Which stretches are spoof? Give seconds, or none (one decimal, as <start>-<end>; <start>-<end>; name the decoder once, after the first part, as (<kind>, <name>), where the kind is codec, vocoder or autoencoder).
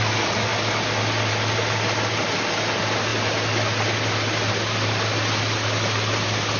none